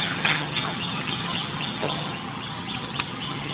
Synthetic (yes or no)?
yes